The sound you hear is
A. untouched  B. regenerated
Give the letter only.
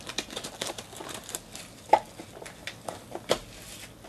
A